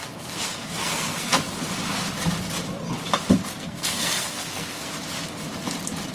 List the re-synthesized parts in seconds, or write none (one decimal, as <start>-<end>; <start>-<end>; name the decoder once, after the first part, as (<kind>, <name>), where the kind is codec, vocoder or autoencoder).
0.0-1.4 (codec, SNAC); 3.5-4.9